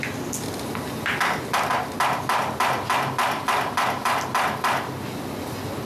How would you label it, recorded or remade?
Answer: recorded